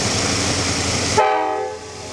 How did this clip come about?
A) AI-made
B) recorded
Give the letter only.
B